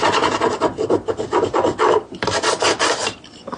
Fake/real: real